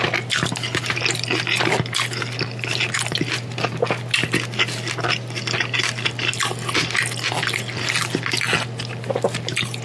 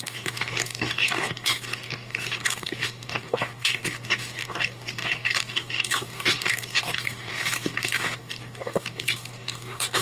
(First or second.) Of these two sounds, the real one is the first